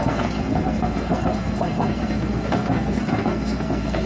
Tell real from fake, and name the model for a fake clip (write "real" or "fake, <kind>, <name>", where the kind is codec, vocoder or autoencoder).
fake, codec, SNAC